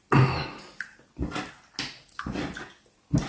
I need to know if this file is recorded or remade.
recorded